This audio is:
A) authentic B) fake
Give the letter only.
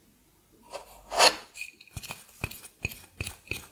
A